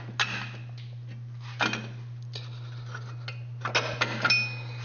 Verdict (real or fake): real